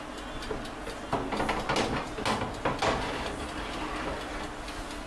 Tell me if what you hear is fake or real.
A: real